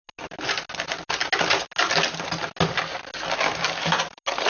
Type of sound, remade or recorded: recorded